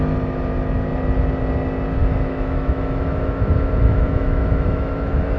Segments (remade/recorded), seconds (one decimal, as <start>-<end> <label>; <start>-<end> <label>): 0.0-2.0 recorded; 2.0-5.4 remade